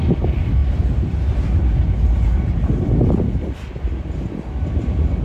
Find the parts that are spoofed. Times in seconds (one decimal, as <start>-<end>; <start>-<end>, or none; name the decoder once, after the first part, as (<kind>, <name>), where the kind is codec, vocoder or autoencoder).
none